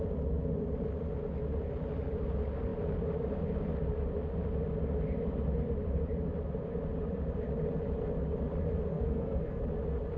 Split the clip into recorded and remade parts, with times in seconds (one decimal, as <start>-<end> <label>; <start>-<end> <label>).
0.0-8.9 recorded; 8.9-9.6 remade; 9.6-10.2 recorded